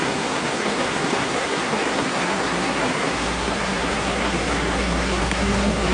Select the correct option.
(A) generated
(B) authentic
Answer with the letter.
A